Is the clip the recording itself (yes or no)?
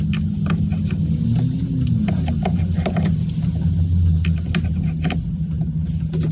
yes